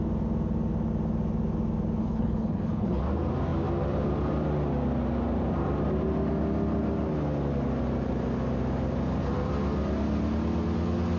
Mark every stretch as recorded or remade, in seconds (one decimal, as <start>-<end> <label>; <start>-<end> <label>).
0.0-2.0 recorded; 2.0-3.0 remade; 3.0-11.2 recorded